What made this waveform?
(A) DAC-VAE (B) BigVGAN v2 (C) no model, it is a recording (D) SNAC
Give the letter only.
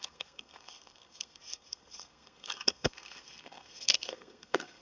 D